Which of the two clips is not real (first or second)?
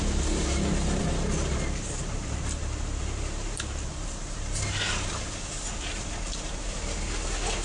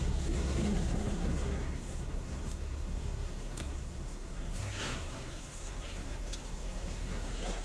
second